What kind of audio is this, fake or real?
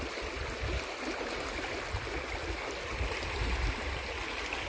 real